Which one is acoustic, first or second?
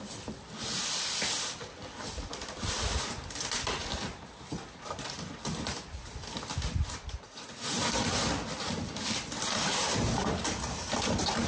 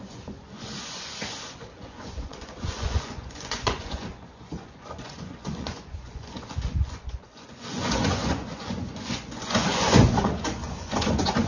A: first